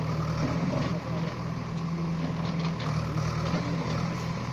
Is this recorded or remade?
recorded